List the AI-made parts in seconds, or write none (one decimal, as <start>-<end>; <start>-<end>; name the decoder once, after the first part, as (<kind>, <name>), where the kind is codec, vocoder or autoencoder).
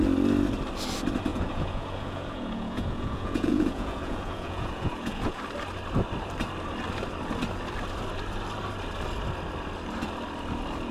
1.3-5.4 (vocoder, Vocos)